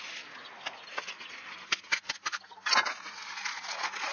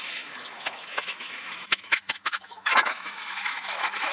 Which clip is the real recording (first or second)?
first